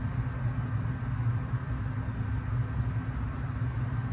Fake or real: real